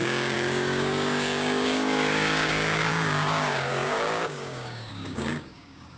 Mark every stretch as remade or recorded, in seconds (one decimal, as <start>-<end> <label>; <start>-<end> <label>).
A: 0.0-6.0 remade